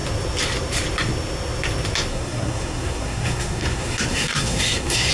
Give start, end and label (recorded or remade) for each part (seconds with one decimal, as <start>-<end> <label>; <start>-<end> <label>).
0.0-2.1 recorded; 2.1-5.1 remade